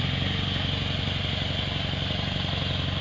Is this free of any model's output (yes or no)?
yes